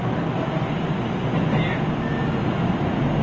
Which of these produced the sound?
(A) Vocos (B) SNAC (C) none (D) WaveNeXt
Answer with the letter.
C